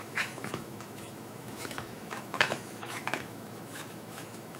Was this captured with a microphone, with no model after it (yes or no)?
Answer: no